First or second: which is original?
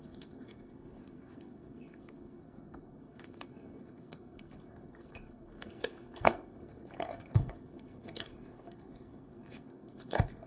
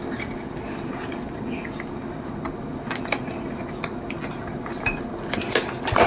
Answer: second